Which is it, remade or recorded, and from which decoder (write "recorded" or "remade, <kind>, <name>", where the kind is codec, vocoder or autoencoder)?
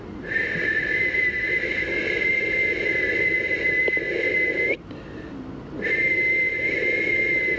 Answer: recorded